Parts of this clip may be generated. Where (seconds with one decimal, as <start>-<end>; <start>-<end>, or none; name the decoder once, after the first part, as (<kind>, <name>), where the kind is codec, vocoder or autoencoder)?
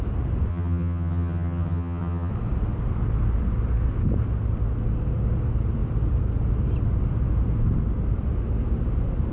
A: 0.5-2.3 (vocoder, HiFi-GAN)